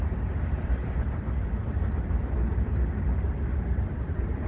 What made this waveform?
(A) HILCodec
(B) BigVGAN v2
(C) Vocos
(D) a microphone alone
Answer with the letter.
D